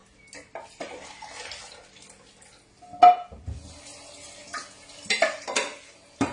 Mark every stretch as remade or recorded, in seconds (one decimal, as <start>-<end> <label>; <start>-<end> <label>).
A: 0.0-6.3 recorded